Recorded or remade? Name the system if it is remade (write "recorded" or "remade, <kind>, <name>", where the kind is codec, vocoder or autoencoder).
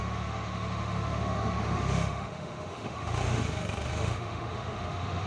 remade, autoencoder, DAC-VAE